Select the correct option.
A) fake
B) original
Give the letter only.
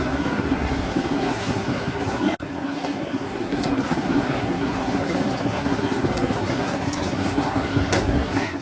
A